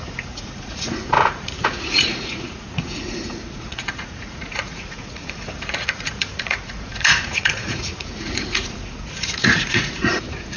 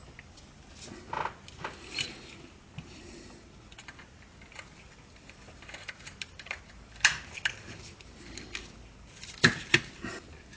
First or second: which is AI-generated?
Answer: first